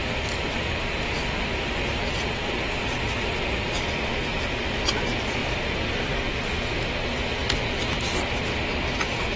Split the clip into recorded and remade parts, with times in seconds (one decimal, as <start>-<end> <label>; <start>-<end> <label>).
0.0-9.4 recorded